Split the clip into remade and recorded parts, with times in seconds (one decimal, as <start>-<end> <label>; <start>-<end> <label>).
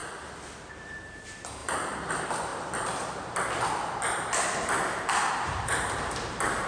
0.0-0.7 recorded; 0.7-2.5 remade; 2.5-5.3 recorded; 5.3-6.7 remade